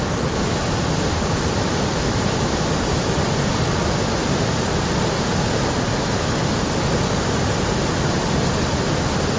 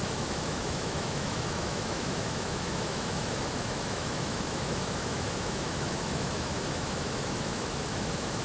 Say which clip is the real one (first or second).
first